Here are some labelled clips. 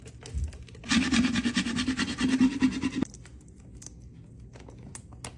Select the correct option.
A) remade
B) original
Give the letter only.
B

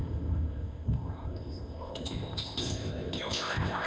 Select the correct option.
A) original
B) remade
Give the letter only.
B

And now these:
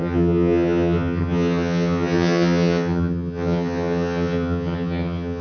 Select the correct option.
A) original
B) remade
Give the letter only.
B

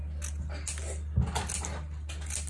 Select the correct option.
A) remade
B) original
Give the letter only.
B